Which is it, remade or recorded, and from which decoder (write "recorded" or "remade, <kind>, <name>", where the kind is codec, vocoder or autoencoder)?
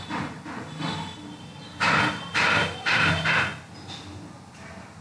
recorded